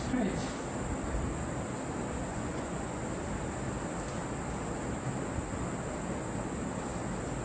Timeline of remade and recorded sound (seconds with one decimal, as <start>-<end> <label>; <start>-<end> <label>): 0.0-2.3 recorded; 2.3-3.0 remade; 3.0-7.4 recorded